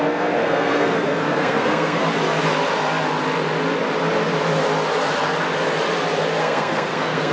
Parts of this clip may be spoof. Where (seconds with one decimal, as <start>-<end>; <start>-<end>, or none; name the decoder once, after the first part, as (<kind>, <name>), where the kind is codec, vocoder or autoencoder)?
0.0-2.0 (codec, SNAC); 6.4-7.3